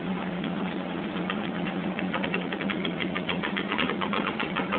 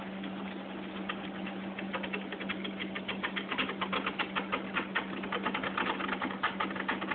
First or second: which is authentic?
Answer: second